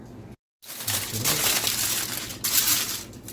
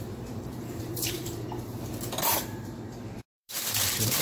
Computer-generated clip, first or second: second